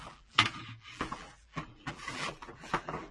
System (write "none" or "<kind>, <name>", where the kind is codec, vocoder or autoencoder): vocoder, BigVGAN v2